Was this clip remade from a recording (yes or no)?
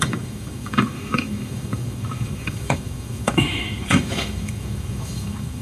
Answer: yes